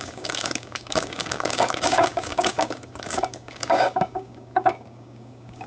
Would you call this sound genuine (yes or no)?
no